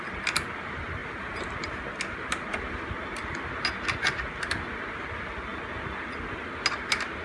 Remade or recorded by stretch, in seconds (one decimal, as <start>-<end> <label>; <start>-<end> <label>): 0.0-7.2 recorded